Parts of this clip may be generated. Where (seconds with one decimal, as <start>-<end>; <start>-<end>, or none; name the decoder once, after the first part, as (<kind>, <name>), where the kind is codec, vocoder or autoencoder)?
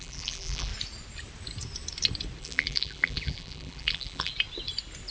0.0-0.7 (vocoder, BigVGAN v2); 2.4-4.3